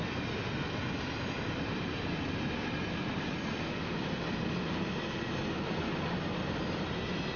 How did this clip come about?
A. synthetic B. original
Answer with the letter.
B